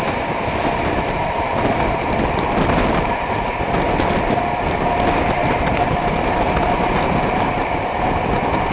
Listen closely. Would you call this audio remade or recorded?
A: recorded